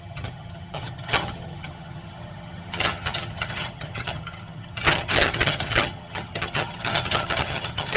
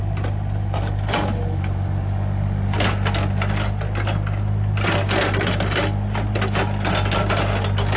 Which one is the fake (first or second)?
first